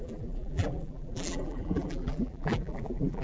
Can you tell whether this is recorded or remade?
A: remade